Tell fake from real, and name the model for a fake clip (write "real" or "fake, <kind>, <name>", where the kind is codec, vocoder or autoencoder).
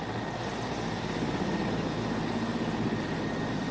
real